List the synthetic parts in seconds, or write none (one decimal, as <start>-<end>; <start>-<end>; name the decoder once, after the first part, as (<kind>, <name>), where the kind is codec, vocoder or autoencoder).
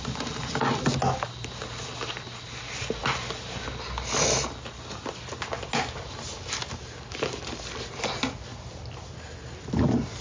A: none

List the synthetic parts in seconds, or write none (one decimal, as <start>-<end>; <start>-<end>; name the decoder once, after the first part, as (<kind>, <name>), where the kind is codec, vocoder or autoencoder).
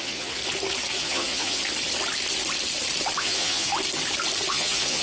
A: 0.0-0.4 (vocoder, Vocos); 0.9-1.6; 3.2-3.7; 4.5-5.0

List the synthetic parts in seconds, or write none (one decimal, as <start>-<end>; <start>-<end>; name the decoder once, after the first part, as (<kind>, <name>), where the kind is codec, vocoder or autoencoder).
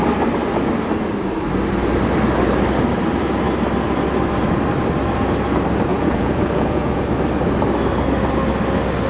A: 5.9-7.0 (vocoder, Vocos)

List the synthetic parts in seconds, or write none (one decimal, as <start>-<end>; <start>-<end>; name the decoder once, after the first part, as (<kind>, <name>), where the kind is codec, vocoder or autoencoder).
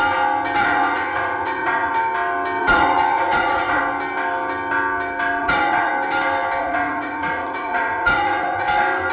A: 0.6-1.9 (vocoder, Vocos); 2.6-3.8; 5.4-5.9; 6.6-8.7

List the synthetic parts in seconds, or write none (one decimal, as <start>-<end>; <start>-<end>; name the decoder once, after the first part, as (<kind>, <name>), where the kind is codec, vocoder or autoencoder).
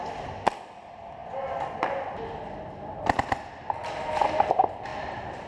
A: none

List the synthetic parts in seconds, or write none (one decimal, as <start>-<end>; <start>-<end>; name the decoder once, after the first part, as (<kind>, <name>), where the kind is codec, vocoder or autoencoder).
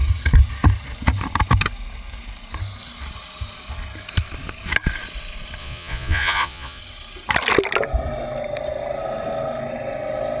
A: 5.6-6.8 (vocoder, Vocos)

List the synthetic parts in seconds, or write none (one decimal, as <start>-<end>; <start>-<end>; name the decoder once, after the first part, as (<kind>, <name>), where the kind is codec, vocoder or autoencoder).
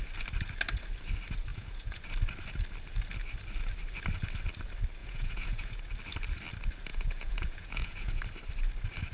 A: 1.5-2.0 (vocoder, Vocos); 5.0-5.8; 6.9-8.2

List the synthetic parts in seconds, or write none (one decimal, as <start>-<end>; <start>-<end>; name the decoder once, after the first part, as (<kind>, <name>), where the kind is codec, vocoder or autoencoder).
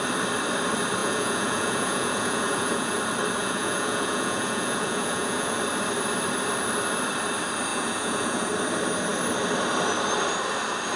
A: 1.0-3.0 (vocoder, Vocos); 3.4-5.6; 7.7-8.5